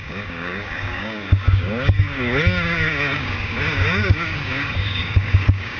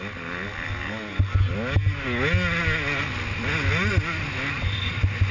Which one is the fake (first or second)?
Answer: first